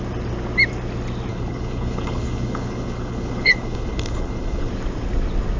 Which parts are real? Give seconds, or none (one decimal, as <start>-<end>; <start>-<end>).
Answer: 0.0-1.3; 4.7-5.6